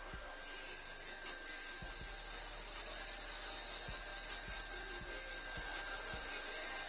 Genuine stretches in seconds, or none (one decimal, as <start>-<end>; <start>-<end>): 0.0-6.9